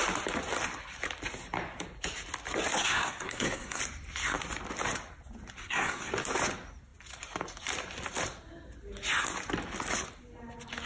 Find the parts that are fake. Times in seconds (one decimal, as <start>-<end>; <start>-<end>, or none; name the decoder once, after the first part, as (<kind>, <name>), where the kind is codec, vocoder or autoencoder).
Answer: 2.8-3.8 (codec, SNAC); 5.6-6.1